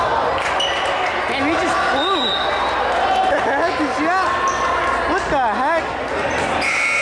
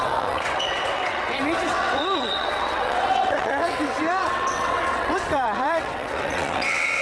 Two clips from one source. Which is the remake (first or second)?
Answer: second